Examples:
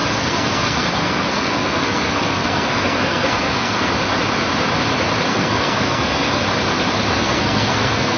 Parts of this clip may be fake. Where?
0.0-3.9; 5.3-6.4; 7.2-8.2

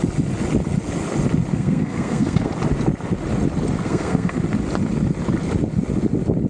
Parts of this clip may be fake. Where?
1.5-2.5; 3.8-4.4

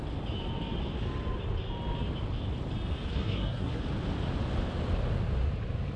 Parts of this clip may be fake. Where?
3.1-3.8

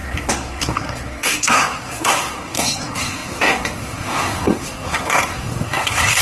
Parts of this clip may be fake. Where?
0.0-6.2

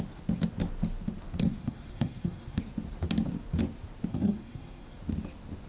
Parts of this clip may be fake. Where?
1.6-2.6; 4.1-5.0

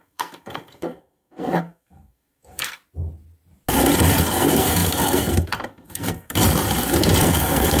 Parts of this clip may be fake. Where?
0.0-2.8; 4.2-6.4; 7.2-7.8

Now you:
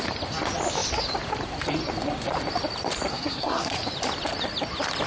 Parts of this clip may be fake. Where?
3.1-3.7

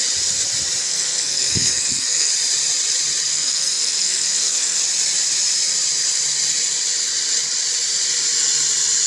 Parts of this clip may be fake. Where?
0.8-2.3; 3.3-4.8